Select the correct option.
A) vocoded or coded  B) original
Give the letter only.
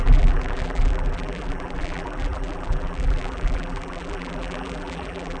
A